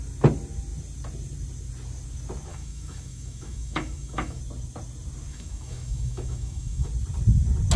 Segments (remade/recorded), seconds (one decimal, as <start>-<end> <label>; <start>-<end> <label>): 0.0-2.5 recorded; 2.5-4.4 remade; 4.4-5.3 recorded; 5.3-6.9 remade; 6.9-7.8 recorded